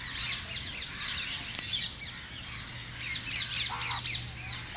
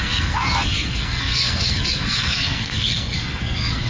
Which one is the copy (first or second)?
second